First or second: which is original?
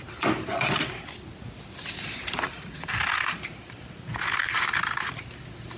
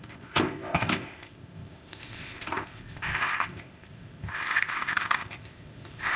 first